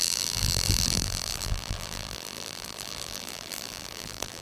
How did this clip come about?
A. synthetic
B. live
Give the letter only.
A